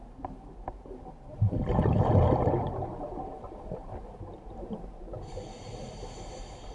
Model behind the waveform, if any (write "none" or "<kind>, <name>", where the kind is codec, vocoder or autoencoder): vocoder, BigVGAN v2